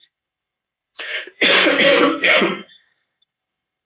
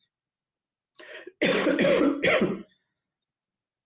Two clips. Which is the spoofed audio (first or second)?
first